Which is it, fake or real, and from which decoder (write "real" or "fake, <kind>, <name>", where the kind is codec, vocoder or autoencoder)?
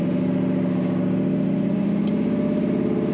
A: real